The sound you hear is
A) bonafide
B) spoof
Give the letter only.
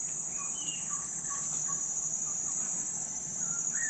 A